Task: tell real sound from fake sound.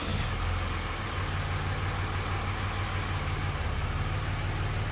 real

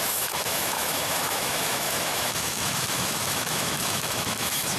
fake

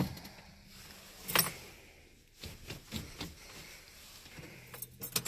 real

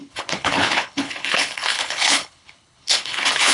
fake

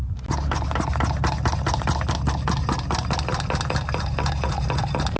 real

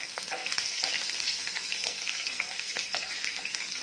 fake